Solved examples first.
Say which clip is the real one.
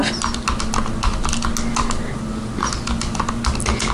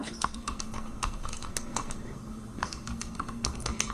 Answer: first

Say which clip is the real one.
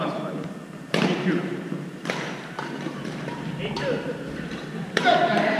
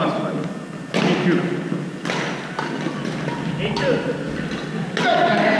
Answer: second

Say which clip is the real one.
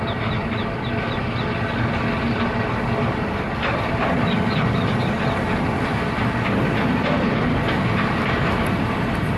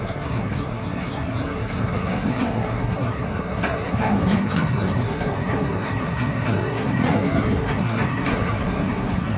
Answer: first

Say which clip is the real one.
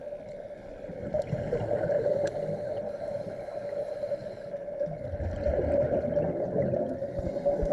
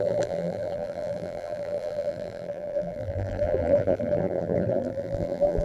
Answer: first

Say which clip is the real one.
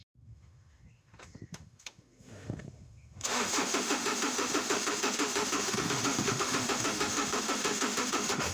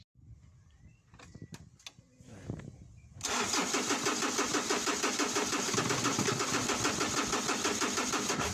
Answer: second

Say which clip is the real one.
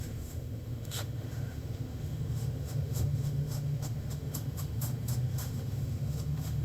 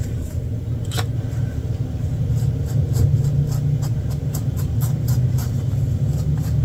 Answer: second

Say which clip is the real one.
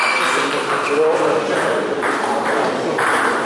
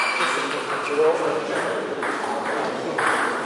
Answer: first